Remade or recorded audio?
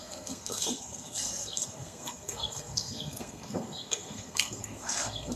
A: remade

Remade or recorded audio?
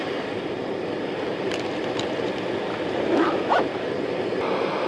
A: remade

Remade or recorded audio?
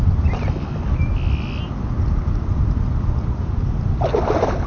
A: recorded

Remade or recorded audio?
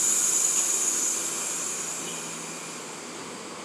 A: recorded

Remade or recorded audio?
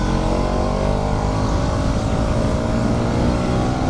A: remade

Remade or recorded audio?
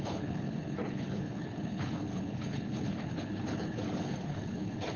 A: remade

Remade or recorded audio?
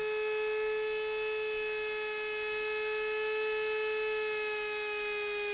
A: recorded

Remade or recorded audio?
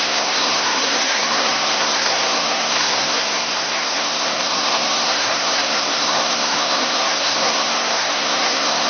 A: remade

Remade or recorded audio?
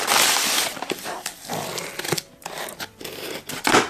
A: remade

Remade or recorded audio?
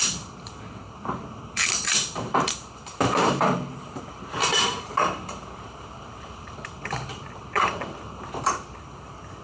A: remade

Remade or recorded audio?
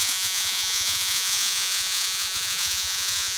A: remade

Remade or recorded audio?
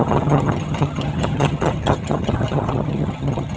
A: remade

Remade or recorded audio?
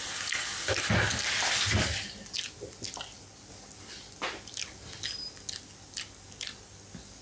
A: recorded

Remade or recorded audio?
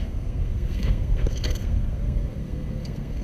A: remade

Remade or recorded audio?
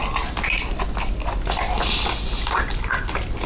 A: recorded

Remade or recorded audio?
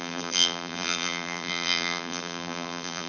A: remade